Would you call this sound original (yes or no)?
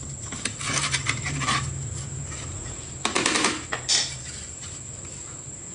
no